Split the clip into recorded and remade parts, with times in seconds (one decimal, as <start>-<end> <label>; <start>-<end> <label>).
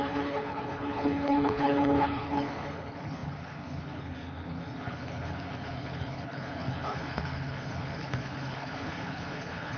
0.0-9.8 remade